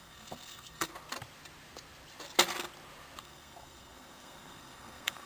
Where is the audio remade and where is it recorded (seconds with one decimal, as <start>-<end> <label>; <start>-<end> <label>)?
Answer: 0.0-0.9 remade; 0.9-3.2 recorded; 3.2-5.3 remade